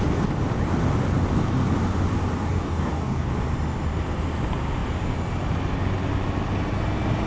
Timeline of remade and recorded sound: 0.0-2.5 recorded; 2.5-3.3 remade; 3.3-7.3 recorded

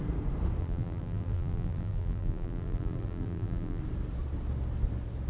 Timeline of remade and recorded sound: 0.0-0.6 recorded; 0.6-3.8 remade; 3.8-5.3 recorded

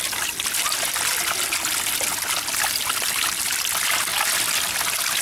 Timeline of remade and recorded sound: 0.0-5.2 recorded